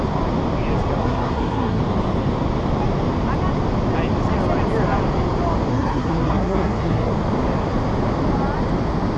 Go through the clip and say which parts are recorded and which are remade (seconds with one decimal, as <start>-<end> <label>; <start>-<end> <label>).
0.0-1.0 recorded; 1.0-1.8 remade; 1.8-5.7 recorded; 5.7-7.1 remade; 7.1-9.2 recorded